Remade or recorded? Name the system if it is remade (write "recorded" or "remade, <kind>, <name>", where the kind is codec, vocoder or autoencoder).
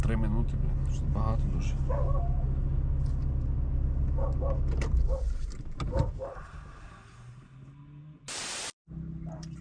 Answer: recorded